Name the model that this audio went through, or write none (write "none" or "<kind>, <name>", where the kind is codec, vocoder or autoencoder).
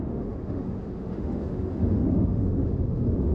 autoencoder, DAC-VAE